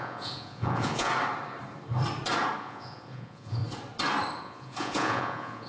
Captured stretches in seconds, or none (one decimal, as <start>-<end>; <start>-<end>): 1.1-2.6; 3.6-4.4